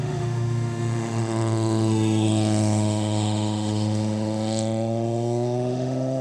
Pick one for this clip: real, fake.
fake